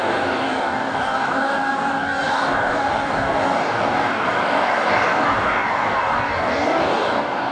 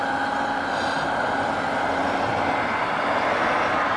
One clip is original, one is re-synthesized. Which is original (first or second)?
second